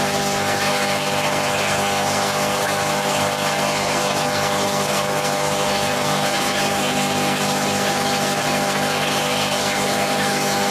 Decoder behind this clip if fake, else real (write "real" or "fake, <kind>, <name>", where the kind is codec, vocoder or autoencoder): fake, codec, SNAC